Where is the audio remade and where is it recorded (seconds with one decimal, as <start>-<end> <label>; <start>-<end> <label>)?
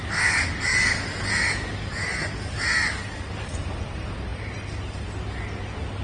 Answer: 0.0-6.0 recorded